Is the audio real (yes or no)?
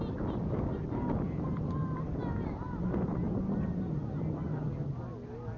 yes